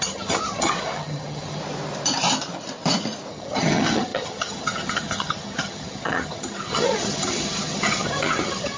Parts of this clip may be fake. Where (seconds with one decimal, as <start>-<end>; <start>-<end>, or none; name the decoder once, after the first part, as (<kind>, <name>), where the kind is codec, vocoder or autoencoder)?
0.0-1.6 (vocoder, HiFi-GAN); 3.3-8.8